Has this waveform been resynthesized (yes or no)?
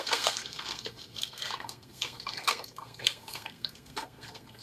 yes